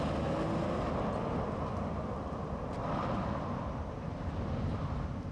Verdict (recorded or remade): recorded